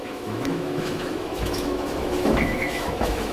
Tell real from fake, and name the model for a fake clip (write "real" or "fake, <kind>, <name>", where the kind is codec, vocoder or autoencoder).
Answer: fake, autoencoder, DAC-VAE